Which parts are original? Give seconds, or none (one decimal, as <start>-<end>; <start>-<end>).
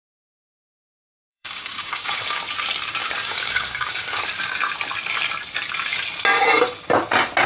2.4-3.0; 4.2-7.5